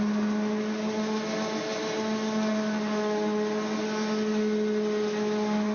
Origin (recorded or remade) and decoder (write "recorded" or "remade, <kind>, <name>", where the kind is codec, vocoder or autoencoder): recorded